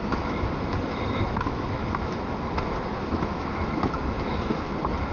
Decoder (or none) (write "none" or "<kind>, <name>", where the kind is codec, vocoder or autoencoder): autoencoder, DAC-VAE